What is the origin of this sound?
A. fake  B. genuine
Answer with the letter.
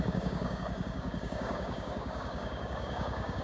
A